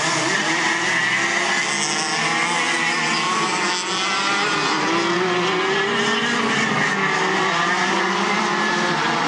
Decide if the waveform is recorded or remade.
recorded